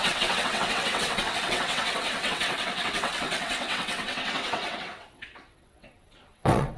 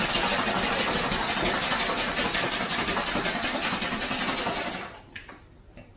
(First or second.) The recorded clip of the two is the second